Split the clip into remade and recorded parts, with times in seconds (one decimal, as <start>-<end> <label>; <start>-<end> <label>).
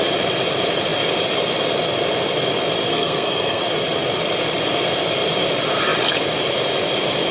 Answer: 0.0-2.9 recorded; 2.9-3.6 remade; 3.6-7.3 recorded